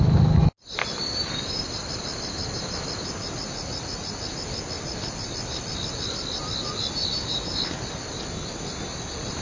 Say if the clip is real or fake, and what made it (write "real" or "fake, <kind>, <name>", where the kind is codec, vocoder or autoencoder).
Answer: real